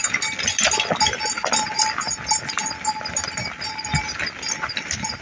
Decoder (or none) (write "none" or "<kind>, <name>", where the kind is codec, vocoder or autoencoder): none